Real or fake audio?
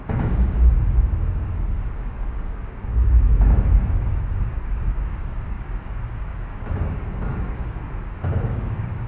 fake